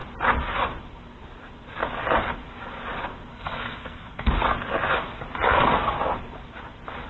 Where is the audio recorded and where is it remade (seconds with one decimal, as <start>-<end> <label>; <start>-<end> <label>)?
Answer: 0.0-3.3 recorded; 3.3-4.3 remade; 4.3-7.1 recorded